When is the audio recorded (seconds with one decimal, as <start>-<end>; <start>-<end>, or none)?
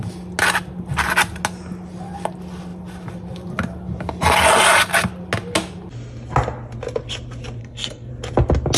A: 0.0-7.6; 8.1-8.8